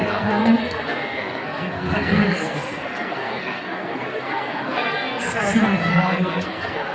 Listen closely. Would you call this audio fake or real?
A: fake